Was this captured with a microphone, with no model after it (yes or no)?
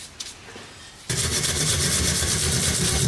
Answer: yes